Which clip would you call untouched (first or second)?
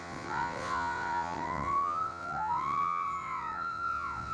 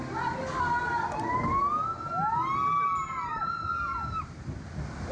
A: second